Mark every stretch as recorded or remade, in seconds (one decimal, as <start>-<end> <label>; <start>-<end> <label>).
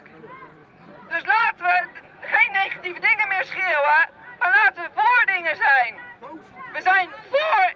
0.0-0.6 recorded; 0.6-3.0 remade; 3.0-7.8 recorded